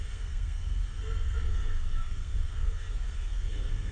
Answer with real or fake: fake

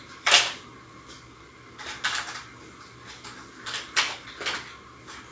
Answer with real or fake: real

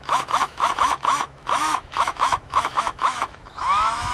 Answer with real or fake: fake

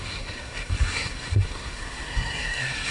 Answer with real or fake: fake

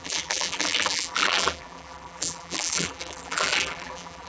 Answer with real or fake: fake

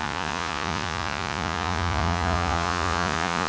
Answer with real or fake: fake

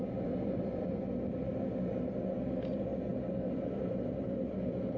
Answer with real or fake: real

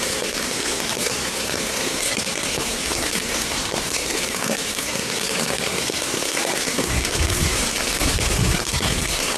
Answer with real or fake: fake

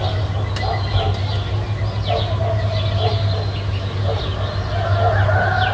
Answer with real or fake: real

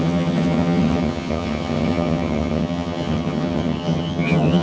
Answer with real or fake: fake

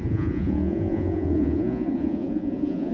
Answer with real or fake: fake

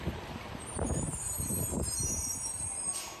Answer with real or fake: fake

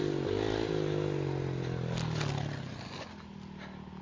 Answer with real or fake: real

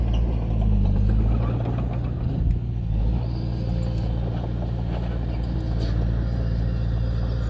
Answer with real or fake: real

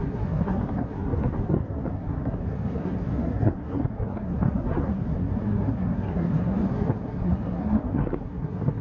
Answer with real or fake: fake